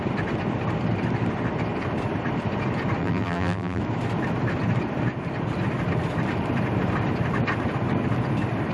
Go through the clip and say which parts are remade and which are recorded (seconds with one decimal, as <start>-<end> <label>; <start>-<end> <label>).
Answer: 0.0-3.0 recorded; 3.0-3.8 remade; 3.8-8.7 recorded